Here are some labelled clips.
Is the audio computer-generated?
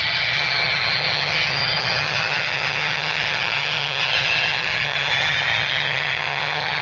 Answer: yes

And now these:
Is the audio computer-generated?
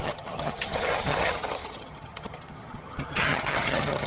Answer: yes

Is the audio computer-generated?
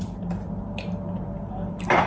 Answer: no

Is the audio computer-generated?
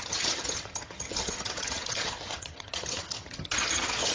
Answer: yes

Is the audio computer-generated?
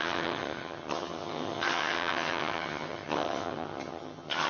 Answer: yes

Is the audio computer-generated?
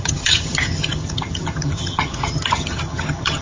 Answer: yes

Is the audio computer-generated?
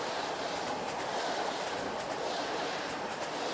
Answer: no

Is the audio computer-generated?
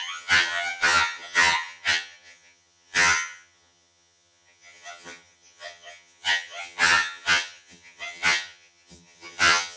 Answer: yes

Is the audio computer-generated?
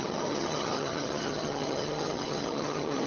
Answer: yes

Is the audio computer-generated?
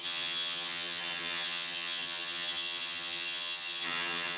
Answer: yes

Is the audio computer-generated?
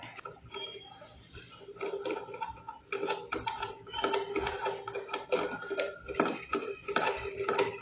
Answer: no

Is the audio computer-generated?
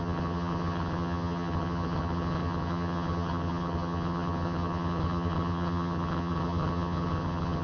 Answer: yes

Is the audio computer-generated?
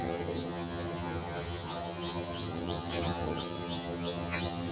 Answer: yes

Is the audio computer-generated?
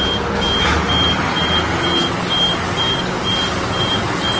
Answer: no